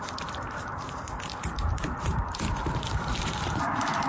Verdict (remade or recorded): remade